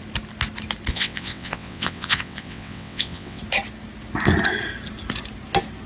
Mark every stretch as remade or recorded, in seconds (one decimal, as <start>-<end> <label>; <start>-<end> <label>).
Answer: 0.0-0.9 recorded; 0.9-3.4 remade; 3.4-5.9 recorded